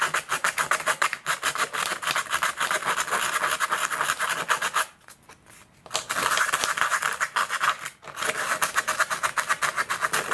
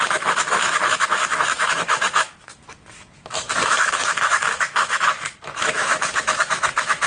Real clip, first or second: first